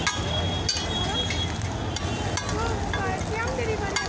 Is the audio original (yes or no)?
yes